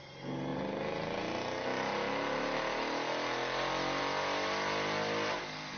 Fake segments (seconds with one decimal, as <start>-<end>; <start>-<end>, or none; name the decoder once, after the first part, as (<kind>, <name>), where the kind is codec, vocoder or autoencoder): none